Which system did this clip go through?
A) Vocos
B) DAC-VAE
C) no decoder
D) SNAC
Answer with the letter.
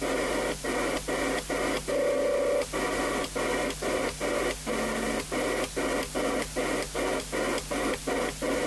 C